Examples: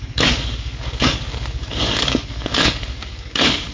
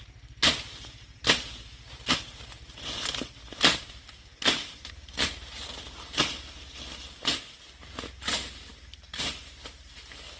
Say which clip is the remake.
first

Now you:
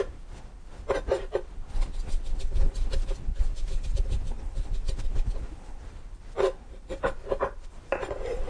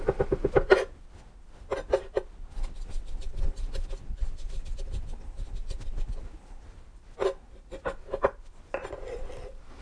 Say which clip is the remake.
first